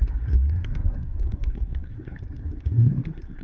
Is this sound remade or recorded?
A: remade